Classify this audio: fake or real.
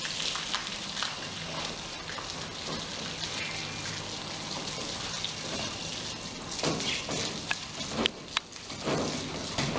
real